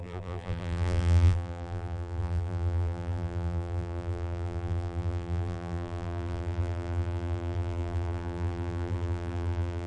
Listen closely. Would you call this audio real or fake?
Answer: fake